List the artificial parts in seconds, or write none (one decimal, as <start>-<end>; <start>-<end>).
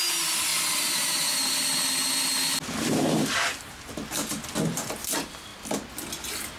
none